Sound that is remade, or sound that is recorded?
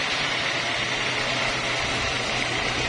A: recorded